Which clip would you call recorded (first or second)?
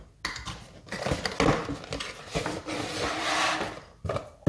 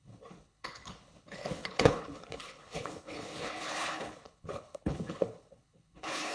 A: first